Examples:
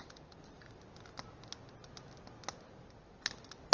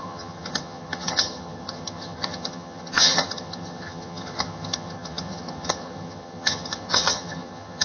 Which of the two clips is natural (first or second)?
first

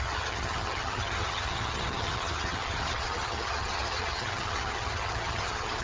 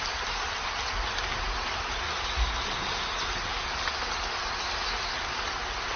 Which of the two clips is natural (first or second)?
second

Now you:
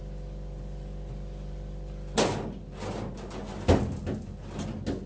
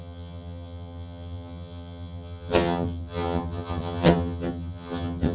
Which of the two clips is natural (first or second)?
first